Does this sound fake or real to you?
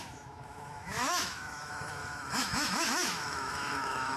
fake